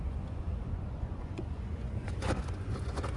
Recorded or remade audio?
remade